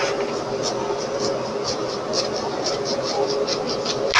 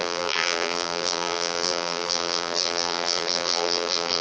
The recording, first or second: first